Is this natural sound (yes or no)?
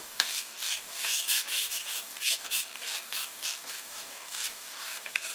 no